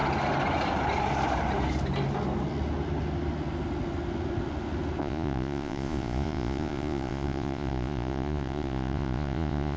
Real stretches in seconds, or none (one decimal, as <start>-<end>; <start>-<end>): 0.0-5.0